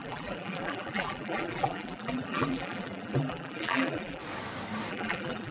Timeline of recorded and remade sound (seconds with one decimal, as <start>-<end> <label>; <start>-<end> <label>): 0.0-4.2 remade; 4.2-4.9 recorded; 4.9-5.5 remade